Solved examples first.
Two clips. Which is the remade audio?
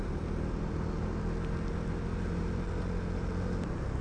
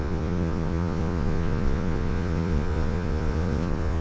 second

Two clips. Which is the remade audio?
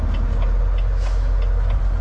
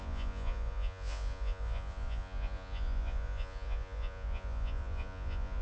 second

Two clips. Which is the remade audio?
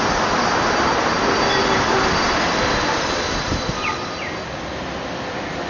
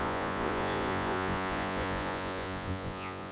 second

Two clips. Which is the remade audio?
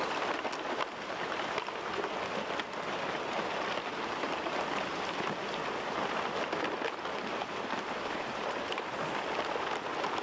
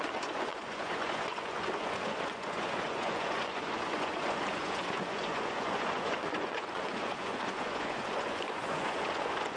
second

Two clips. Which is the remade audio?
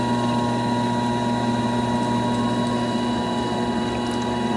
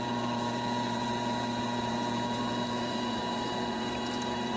second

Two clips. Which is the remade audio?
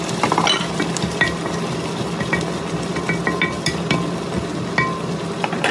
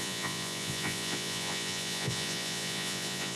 second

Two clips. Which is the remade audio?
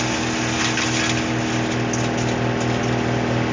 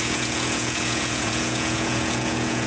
second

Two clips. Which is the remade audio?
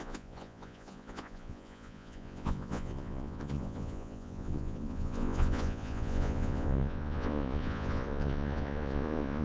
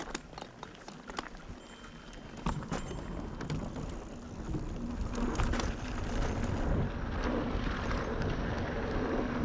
first